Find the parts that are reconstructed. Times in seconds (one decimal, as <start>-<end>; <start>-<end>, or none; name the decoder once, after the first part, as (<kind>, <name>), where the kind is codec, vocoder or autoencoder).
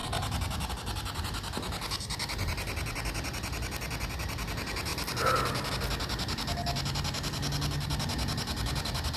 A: none